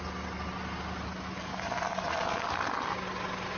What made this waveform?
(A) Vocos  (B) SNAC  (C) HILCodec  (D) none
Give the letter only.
D